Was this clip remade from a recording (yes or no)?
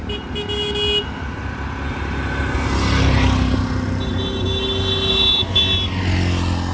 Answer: no